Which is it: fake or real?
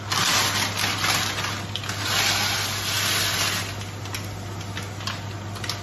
real